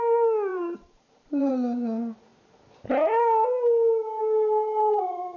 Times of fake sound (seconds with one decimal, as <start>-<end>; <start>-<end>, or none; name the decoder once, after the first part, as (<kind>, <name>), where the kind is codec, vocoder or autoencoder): 0.5-1.5 (vocoder, BigVGAN v2)